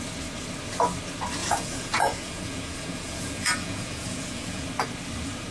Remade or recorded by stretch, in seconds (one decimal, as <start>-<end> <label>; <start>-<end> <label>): 0.0-1.4 recorded; 1.4-4.7 remade; 4.7-5.5 recorded